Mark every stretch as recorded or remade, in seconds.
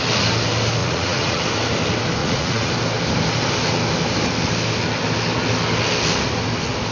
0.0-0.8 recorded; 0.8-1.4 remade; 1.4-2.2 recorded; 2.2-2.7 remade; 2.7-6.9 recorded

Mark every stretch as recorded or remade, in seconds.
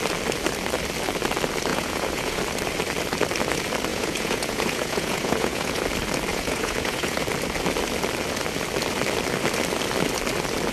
0.0-1.7 recorded; 1.7-2.4 remade; 2.4-3.9 recorded; 3.9-5.8 remade; 5.8-6.3 recorded; 6.3-7.2 remade; 7.2-10.7 recorded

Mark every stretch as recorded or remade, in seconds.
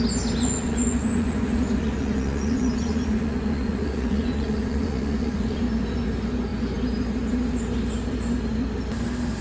0.0-0.4 recorded; 0.4-5.6 remade; 5.6-9.4 recorded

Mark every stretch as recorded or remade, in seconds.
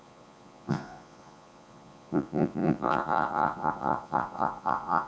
0.0-5.1 remade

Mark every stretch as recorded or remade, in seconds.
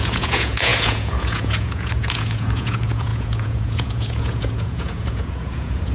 0.0-5.9 remade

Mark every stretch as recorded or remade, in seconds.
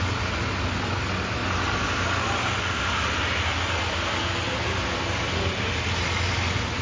0.0-6.8 recorded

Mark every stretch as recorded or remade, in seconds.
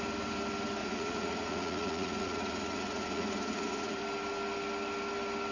0.0-0.8 recorded; 0.8-4.0 remade; 4.0-5.5 recorded